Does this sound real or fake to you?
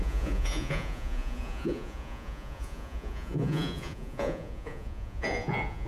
fake